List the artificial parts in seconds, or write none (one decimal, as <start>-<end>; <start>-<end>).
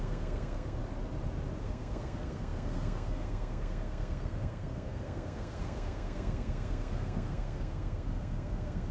0.0-0.8; 1.6-8.9